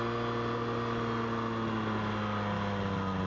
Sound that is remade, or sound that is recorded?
recorded